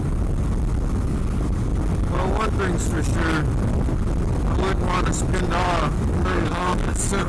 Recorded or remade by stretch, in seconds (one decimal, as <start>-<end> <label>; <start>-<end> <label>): 0.0-6.2 recorded; 6.2-7.3 remade